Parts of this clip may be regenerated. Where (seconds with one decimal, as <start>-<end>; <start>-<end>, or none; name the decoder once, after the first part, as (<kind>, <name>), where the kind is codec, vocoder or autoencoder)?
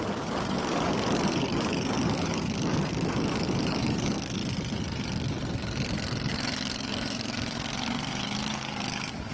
0.0-4.4 (codec, DAC); 6.3-9.3